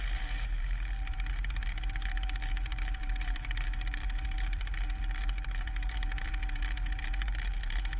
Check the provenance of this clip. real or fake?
fake